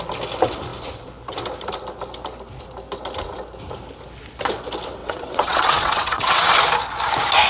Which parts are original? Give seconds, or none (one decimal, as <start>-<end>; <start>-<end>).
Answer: 0.0-5.0; 6.5-7.5